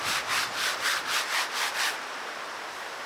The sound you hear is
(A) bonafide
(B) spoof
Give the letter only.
A